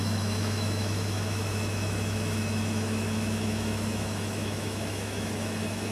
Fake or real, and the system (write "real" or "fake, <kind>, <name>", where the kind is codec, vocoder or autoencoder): fake, autoencoder, DAC-VAE